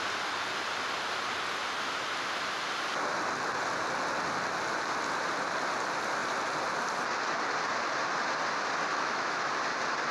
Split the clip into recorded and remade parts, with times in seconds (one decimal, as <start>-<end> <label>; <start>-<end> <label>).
0.0-8.9 recorded; 8.9-9.5 remade; 9.5-10.1 recorded